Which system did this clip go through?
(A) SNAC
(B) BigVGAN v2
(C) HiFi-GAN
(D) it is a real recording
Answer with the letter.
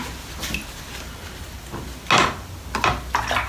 D